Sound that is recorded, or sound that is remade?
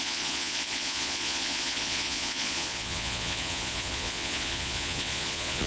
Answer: remade